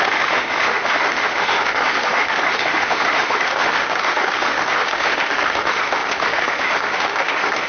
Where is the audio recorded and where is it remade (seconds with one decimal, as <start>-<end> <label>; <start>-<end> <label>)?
0.0-7.7 remade